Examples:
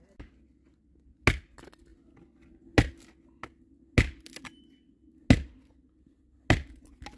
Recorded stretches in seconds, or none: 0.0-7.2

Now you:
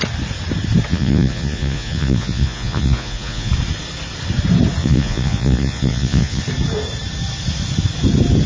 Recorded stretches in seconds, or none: 0.0-0.9; 3.5-4.8; 6.4-8.5

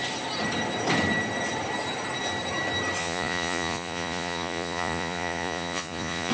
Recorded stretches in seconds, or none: 0.0-3.0

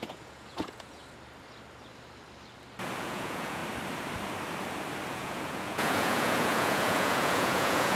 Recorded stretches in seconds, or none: 1.0-3.0; 3.6-5.1

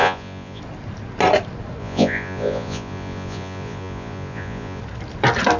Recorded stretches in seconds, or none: 0.6-1.8; 4.8-5.6

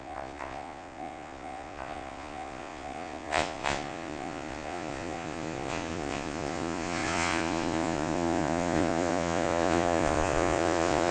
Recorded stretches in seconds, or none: none

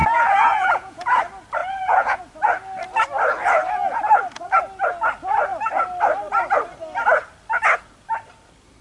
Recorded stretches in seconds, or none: 1.2-1.6; 2.2-8.8